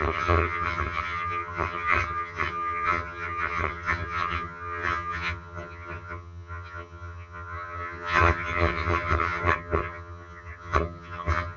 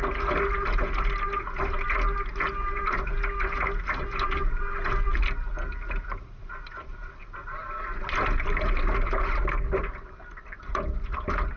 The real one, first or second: second